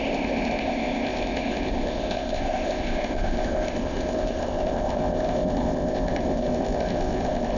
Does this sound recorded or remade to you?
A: remade